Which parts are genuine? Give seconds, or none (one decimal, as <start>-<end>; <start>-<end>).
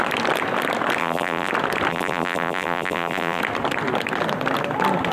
0.0-1.0; 1.5-1.9; 3.4-5.1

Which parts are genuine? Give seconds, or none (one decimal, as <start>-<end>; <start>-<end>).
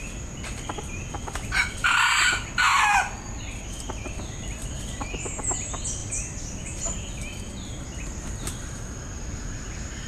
0.0-10.1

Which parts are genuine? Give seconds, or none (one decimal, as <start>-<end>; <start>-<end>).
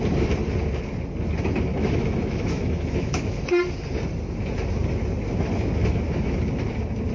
0.0-1.7; 3.4-5.8; 6.4-7.1